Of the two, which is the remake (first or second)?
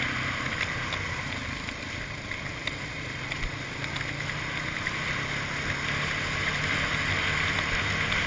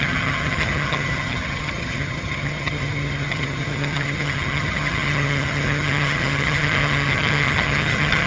second